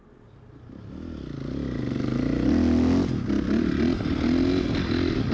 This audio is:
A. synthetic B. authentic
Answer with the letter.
B